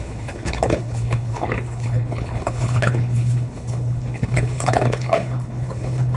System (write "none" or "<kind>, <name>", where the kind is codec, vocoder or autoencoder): codec, HILCodec